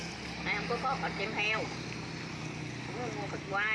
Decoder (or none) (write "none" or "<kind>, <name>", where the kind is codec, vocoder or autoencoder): none